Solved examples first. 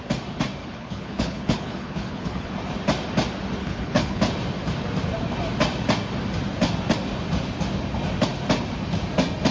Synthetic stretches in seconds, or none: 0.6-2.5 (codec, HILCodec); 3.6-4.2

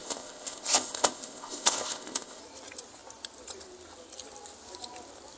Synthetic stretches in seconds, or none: 0.0-2.4 (codec, ZipCodec)

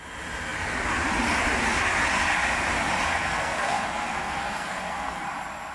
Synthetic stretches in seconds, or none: 3.2-5.3 (codec, SNAC)

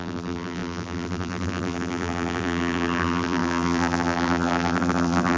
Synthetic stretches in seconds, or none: 0.0-5.4 (vocoder, BigVGAN v2)

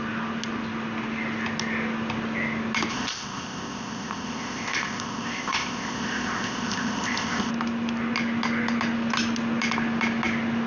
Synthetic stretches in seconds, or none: 2.9-7.5 (codec, ZipCodec)

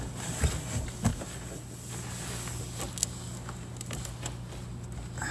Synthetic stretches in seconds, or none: none

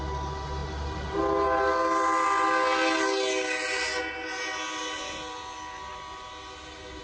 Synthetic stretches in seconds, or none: none

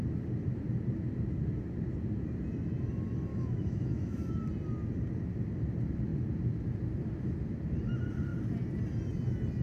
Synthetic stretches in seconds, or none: 3.3-4.3 (autoencoder, DAC-VAE)